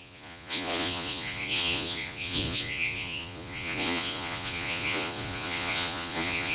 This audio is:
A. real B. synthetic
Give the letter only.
B